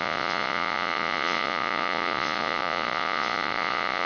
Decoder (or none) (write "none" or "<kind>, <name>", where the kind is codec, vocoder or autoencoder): vocoder, Vocos